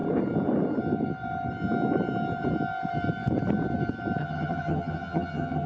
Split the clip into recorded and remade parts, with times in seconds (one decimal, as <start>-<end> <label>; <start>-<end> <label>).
0.0-4.2 recorded; 4.2-5.7 remade